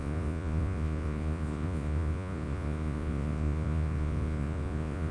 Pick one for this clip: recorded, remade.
remade